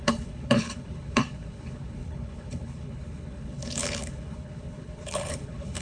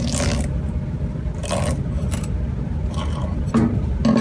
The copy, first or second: first